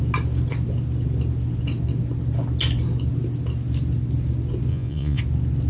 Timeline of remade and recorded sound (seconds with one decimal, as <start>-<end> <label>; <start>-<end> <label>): 0.0-4.7 recorded; 4.7-5.2 remade; 5.2-5.7 recorded